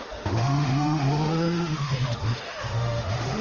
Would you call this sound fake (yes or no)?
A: yes